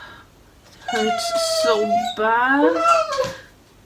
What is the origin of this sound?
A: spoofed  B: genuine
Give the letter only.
B